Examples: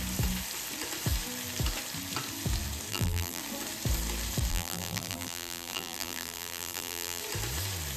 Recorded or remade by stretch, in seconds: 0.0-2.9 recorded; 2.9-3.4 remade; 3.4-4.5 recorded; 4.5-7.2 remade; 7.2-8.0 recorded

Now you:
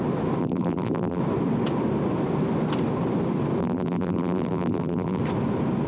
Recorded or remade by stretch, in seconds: 0.0-0.4 recorded; 0.4-1.2 remade; 1.2-3.6 recorded; 3.6-5.2 remade; 5.2-5.9 recorded

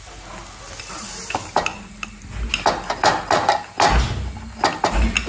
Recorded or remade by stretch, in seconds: 0.0-5.3 recorded

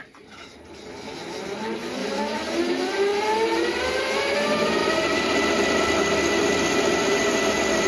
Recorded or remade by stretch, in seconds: 0.0-2.0 recorded; 2.0-2.6 remade; 2.6-4.8 recorded; 4.8-6.0 remade; 6.0-6.4 recorded; 6.4-7.2 remade; 7.2-7.9 recorded

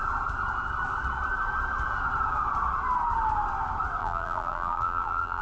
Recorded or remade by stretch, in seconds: 0.0-4.0 recorded; 4.0-5.4 remade

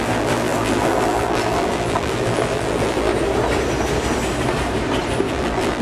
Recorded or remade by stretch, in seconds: 0.0-3.1 remade; 3.1-5.3 recorded; 5.3-5.8 remade